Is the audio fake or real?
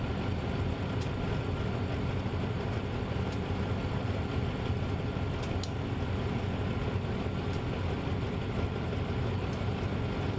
real